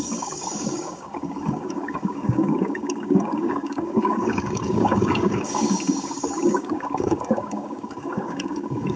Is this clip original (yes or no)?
no